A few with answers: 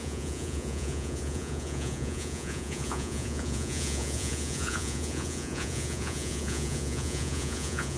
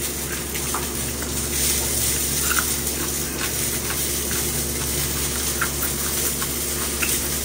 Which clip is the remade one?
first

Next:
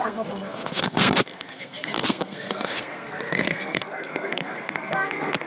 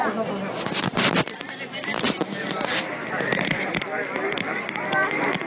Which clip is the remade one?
first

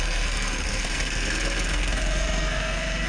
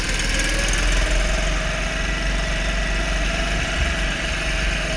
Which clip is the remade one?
first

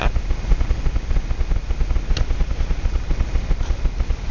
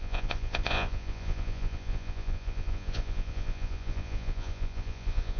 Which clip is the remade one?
second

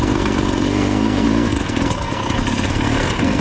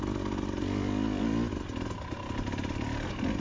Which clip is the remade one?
first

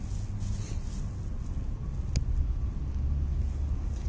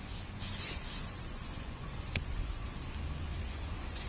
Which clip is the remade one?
second